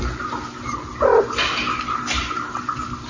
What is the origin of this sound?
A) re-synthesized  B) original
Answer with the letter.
B